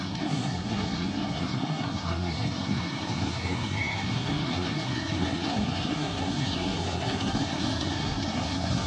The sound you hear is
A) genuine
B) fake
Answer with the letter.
B